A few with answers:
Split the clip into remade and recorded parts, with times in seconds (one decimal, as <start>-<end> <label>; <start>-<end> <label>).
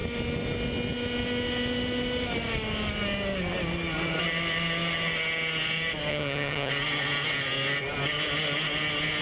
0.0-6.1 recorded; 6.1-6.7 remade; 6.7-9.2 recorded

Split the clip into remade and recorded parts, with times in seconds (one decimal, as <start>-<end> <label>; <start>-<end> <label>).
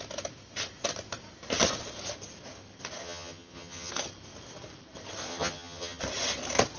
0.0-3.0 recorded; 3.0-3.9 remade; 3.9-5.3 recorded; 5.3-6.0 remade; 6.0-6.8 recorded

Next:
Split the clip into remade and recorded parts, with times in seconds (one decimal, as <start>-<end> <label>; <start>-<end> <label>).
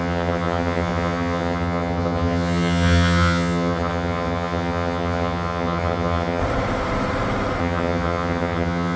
0.0-6.4 remade; 6.4-7.6 recorded; 7.6-9.0 remade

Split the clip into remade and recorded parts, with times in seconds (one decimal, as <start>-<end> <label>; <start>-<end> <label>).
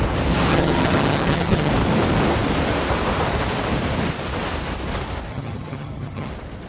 0.0-0.5 recorded; 0.5-1.7 remade; 1.7-5.3 recorded; 5.3-6.3 remade; 6.3-6.7 recorded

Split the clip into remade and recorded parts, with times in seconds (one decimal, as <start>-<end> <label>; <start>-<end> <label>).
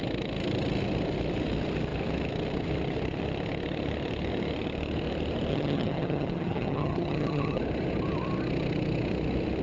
0.0-5.5 recorded; 5.5-7.6 remade; 7.6-9.6 recorded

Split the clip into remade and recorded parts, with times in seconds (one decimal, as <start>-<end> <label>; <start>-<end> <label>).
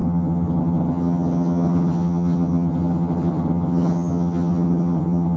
0.0-5.4 remade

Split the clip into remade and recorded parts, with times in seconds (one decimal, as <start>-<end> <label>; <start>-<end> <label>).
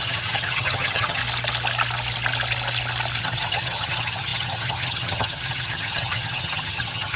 0.0-1.2 remade; 1.2-3.2 recorded; 3.2-7.2 remade